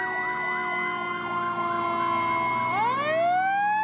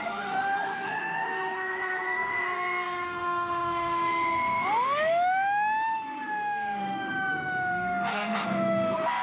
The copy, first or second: second